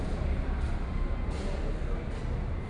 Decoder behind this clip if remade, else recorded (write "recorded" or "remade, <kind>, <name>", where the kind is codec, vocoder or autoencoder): recorded